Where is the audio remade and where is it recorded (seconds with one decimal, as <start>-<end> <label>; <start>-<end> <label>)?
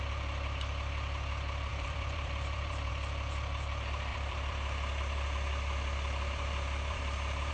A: 0.0-1.7 recorded; 1.7-2.9 remade; 2.9-4.1 recorded; 4.1-7.5 remade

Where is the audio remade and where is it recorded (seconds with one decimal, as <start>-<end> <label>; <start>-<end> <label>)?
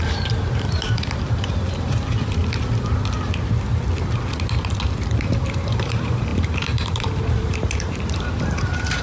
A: 0.0-2.4 remade; 2.4-5.2 recorded; 5.2-9.0 remade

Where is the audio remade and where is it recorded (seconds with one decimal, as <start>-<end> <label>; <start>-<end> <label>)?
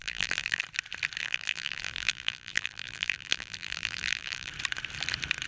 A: 0.0-0.6 remade; 0.6-1.2 recorded; 1.2-4.5 remade; 4.5-5.5 recorded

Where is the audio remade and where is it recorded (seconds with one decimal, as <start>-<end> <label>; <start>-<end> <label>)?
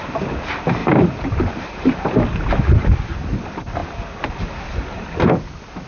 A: 0.0-0.8 recorded; 0.8-2.1 remade; 2.1-5.9 recorded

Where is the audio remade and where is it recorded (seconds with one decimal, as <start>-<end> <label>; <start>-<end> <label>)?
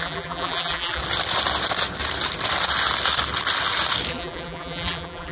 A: 0.0-1.0 remade; 1.0-4.1 recorded; 4.1-5.3 remade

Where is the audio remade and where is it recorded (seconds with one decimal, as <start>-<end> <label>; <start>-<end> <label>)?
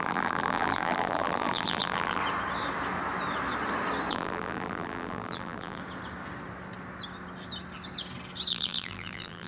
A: 0.0-2.2 remade; 2.2-4.1 recorded; 4.1-5.8 remade; 5.8-8.5 recorded; 8.5-9.5 remade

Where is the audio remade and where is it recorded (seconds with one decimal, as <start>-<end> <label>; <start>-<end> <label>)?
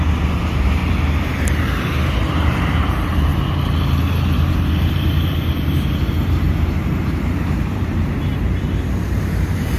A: 0.0-0.8 remade; 0.8-2.3 recorded; 2.3-3.3 remade; 3.3-4.5 recorded; 4.5-9.8 remade